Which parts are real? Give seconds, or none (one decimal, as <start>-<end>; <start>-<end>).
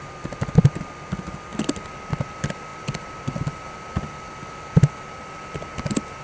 0.0-6.2